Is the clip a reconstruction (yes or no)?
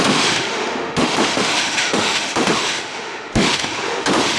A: yes